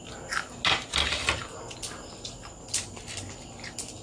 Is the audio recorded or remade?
recorded